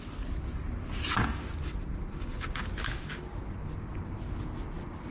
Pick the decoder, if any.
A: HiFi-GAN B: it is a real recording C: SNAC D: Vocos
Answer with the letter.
B